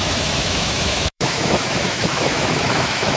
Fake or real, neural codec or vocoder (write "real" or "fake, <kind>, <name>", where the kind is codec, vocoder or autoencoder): fake, autoencoder, DAC-VAE